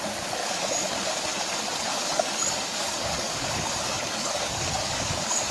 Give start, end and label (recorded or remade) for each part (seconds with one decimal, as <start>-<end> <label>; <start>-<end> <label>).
0.0-0.4 recorded; 0.4-1.3 remade; 1.3-1.9 recorded; 1.9-5.5 remade